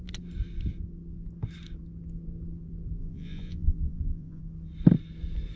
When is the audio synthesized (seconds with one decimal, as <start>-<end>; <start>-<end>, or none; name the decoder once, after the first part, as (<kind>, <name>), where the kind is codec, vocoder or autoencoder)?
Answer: 3.0-4.4 (vocoder, Vocos)